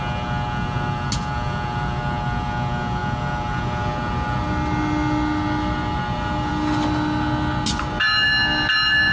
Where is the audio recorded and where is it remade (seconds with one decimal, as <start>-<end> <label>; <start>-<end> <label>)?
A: 0.0-9.1 recorded